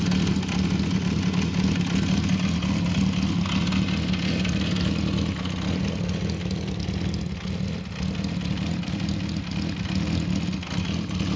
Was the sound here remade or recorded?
recorded